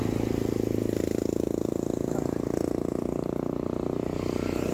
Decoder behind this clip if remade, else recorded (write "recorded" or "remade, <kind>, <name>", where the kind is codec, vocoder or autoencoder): recorded